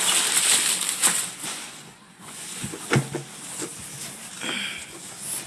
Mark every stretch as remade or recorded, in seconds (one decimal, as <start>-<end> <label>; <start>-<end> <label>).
0.0-1.4 recorded; 1.4-2.9 remade; 2.9-4.7 recorded; 4.7-5.5 remade